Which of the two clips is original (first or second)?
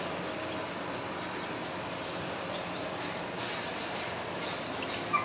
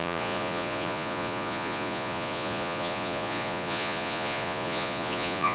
first